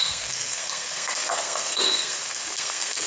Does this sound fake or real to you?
fake